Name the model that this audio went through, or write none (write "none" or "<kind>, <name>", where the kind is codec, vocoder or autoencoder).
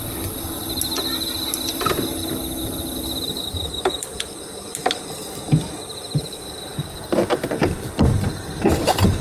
none